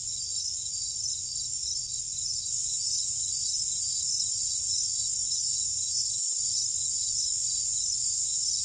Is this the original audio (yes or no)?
yes